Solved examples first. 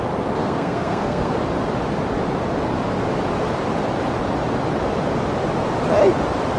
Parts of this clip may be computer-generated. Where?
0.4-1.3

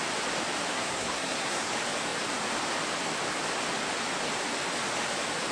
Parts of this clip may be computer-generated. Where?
0.7-1.7

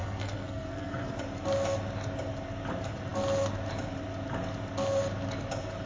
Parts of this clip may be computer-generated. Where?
0.0-1.2

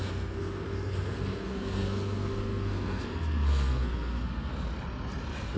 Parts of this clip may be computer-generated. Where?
0.0-4.5

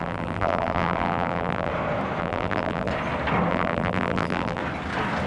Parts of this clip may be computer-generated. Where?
0.0-1.7; 2.2-2.9; 3.5-4.6

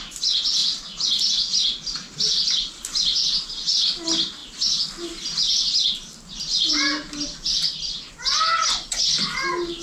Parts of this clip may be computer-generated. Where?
none

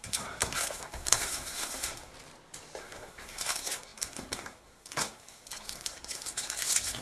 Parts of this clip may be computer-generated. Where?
0.0-2.1; 2.8-7.0